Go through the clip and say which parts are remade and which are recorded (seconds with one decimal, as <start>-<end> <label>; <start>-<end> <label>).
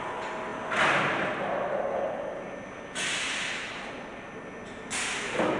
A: 0.0-5.6 recorded